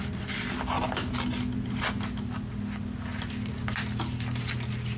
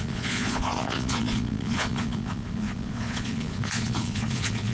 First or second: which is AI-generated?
second